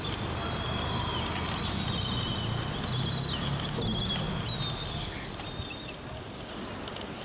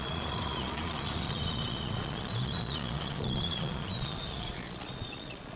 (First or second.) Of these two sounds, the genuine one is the first